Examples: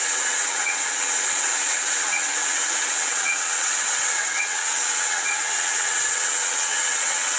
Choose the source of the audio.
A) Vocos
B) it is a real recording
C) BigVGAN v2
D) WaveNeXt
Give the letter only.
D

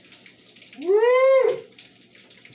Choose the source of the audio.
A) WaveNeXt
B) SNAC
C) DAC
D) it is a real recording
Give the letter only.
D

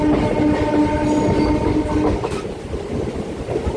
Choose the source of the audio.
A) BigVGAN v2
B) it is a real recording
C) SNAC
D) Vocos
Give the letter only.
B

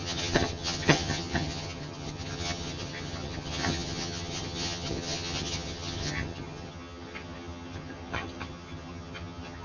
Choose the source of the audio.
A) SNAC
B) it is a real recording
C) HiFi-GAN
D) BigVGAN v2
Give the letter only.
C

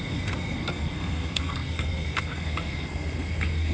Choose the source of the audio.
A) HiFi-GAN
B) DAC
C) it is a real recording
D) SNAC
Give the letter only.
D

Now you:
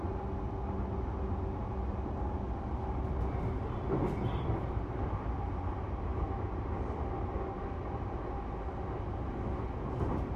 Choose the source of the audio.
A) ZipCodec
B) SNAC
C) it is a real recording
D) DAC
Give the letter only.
C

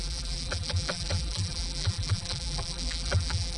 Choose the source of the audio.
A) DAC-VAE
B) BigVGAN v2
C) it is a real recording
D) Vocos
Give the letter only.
B